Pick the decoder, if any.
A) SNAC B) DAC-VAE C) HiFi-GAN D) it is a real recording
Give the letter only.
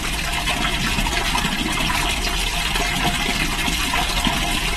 D